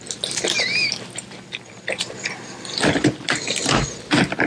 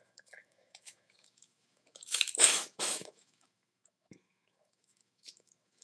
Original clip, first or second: first